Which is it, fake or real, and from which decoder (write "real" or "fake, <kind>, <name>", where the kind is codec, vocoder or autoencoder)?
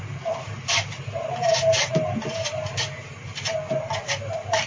real